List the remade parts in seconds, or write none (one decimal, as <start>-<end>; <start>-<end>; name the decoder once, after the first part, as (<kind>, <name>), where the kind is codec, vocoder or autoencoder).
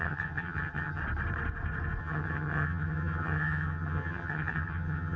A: 0.0-1.0 (vocoder, HiFi-GAN); 2.0-5.2